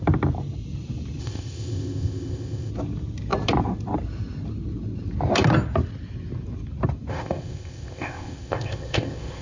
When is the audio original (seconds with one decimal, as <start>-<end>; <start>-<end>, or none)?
0.0-1.2; 2.7-7.1